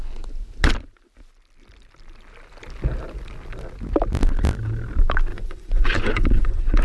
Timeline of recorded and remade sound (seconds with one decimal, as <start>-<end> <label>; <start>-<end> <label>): 0.0-5.3 recorded; 5.3-6.8 remade